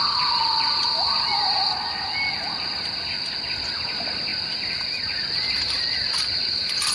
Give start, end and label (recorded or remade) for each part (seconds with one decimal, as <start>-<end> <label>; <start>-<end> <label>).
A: 0.0-6.9 recorded